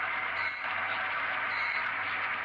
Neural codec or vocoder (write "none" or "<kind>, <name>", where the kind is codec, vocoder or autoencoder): none